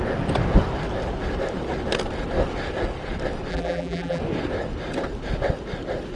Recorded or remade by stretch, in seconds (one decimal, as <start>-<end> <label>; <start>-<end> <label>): 0.0-3.5 recorded; 3.5-4.2 remade; 4.2-6.2 recorded